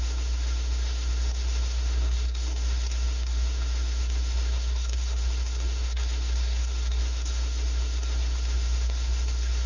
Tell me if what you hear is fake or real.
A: fake